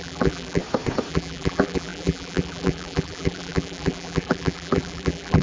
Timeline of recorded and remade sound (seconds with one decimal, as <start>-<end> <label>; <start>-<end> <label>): 0.0-0.6 remade; 0.6-1.1 recorded; 1.1-5.4 remade